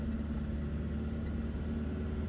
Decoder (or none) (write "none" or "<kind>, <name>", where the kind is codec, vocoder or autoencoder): none